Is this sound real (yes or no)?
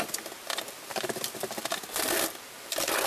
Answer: yes